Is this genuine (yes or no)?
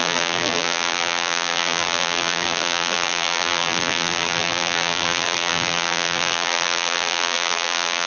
no